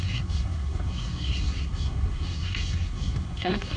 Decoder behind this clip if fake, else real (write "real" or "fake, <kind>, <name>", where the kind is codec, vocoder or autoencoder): fake, codec, SNAC